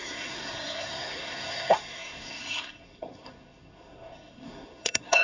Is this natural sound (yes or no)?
no